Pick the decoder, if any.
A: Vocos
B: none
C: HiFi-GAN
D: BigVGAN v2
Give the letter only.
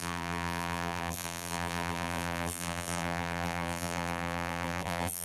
D